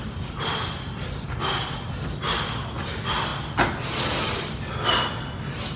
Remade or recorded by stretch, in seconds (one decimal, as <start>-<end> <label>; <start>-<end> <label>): 0.0-5.8 recorded

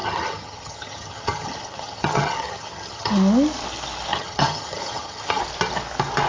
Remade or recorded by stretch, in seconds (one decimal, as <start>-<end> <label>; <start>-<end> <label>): 0.0-3.1 remade; 3.1-4.1 recorded; 4.1-5.4 remade; 5.4-6.3 recorded

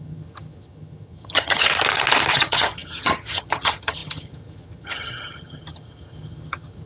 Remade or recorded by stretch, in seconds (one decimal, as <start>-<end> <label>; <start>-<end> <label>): 0.0-1.7 remade; 1.7-2.3 recorded; 2.3-6.9 remade